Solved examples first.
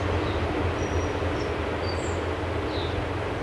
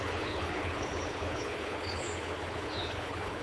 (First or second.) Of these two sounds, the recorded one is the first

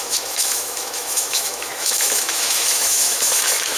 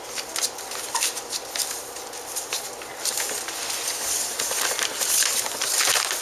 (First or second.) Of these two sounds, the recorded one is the second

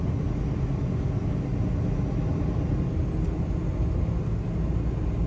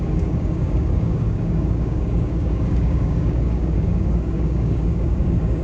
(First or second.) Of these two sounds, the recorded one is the first